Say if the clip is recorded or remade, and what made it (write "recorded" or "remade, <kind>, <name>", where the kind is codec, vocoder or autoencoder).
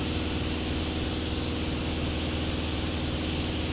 recorded